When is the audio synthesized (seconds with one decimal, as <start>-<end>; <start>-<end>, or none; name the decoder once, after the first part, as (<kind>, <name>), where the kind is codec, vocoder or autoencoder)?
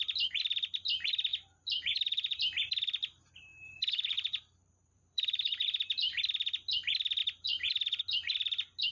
1.3-2.4 (vocoder, BigVGAN v2); 3.5-6.2; 7.2-8.0